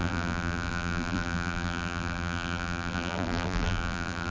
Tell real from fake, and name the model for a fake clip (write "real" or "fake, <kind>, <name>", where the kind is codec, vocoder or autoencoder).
fake, vocoder, BigVGAN v2